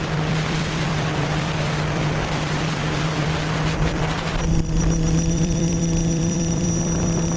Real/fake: fake